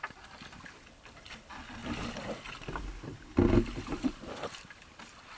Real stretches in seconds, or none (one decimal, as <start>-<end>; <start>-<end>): 0.0-5.4